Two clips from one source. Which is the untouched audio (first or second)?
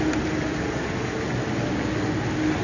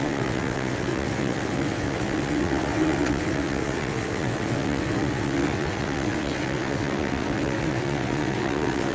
first